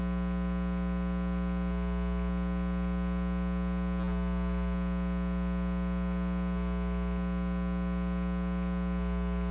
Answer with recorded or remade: recorded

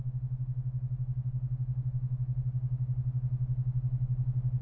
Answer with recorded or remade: recorded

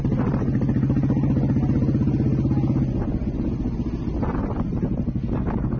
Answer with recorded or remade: recorded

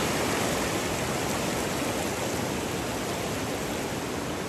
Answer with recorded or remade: recorded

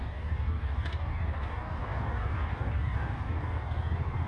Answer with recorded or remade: remade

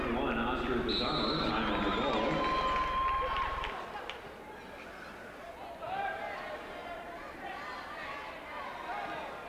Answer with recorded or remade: recorded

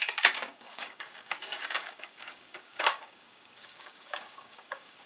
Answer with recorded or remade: remade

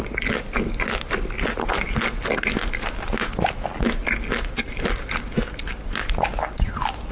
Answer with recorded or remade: recorded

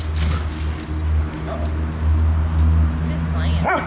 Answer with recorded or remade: recorded